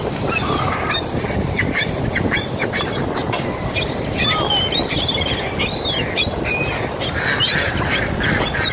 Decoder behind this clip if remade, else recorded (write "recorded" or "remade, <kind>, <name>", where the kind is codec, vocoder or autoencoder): remade, vocoder, BigVGAN v2